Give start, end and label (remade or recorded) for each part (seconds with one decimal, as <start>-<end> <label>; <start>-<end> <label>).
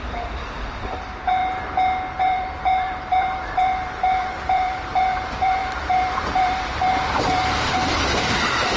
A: 0.0-1.4 remade; 1.4-2.2 recorded; 2.2-8.8 remade